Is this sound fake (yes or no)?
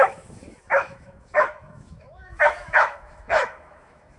yes